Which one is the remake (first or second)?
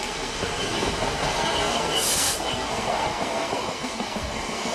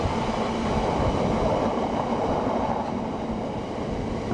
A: first